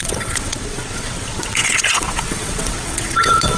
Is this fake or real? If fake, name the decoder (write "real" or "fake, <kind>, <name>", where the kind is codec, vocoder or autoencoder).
fake, vocoder, WaveNeXt